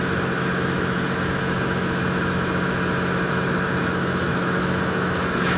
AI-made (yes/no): yes